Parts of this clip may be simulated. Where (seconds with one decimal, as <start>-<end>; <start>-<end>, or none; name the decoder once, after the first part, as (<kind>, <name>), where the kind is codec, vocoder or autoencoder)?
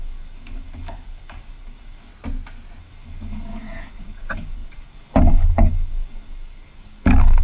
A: 0.0-2.1 (codec, DAC); 2.8-7.4